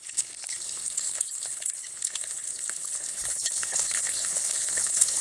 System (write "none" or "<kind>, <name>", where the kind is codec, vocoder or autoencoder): codec, HILCodec